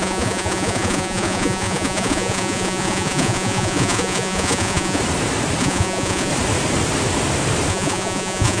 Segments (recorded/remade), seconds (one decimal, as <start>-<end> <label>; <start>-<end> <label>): 0.0-5.0 remade; 5.0-5.6 recorded; 5.6-6.3 remade; 6.3-7.7 recorded; 7.7-8.6 remade